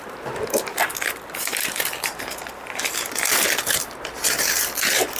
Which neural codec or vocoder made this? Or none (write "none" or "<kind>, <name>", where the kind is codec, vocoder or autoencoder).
none